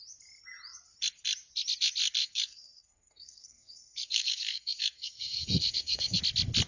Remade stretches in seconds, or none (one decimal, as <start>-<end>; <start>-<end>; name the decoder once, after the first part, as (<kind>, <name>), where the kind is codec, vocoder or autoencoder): 2.2-6.2 (codec, SNAC)